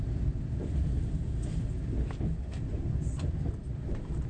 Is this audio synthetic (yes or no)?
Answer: no